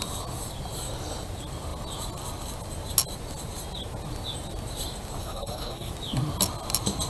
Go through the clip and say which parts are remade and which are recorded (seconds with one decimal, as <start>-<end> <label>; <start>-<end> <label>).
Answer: 0.0-5.2 recorded; 5.2-5.9 remade; 5.9-7.1 recorded